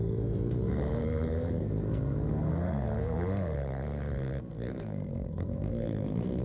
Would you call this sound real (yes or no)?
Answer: no